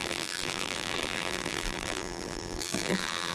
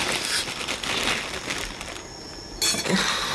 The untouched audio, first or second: second